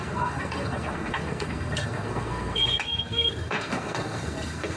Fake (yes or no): yes